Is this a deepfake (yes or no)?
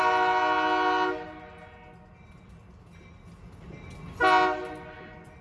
no